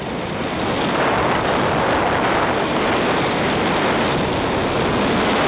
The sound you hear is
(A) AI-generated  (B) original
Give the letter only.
B